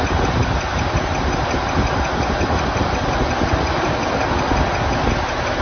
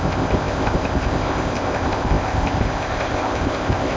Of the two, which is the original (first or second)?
first